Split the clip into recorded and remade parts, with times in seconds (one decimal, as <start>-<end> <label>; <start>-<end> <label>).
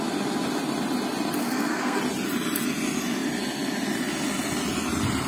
0.0-1.4 recorded; 1.4-2.0 remade; 2.0-5.3 recorded